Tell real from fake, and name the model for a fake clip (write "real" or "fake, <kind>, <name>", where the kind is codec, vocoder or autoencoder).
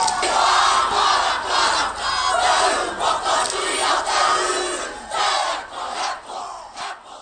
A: real